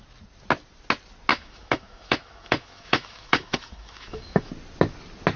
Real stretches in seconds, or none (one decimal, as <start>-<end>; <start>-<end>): 0.0-1.3; 4.5-5.4